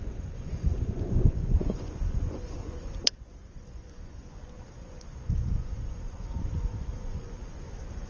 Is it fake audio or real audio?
fake